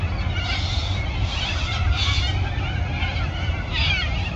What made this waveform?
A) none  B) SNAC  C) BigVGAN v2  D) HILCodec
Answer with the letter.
A